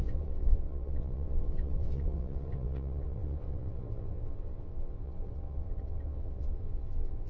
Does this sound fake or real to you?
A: fake